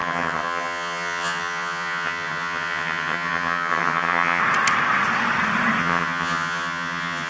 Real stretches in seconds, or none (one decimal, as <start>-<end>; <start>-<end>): 4.4-5.8